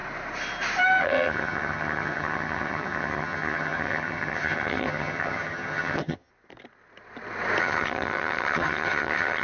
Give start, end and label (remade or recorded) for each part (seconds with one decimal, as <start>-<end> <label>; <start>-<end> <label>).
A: 0.0-1.0 recorded; 1.0-6.3 remade; 6.3-7.6 recorded; 7.6-9.4 remade